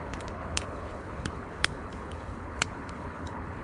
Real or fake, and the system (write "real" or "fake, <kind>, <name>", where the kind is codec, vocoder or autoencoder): fake, codec, HILCodec